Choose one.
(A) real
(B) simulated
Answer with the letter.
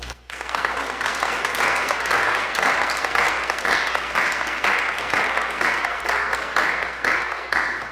B